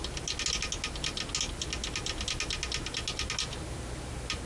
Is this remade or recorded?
recorded